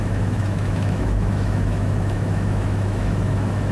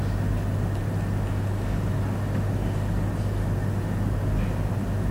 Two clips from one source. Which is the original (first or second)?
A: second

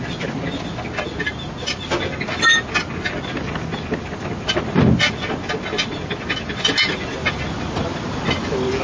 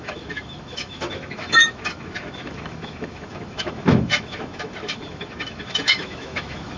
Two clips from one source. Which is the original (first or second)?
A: first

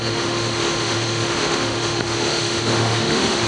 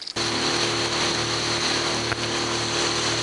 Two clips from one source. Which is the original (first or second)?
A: second